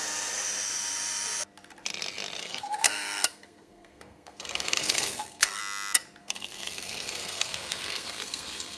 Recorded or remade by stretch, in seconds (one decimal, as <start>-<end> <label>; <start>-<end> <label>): 0.0-2.4 recorded; 2.4-5.6 remade; 5.6-6.2 recorded; 6.2-8.8 remade